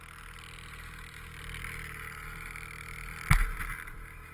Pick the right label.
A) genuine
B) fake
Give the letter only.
A